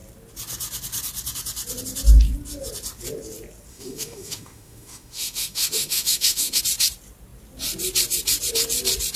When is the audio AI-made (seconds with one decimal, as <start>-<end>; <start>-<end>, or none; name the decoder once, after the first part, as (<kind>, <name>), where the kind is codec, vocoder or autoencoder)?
3.7-6.6 (autoencoder, DAC-VAE)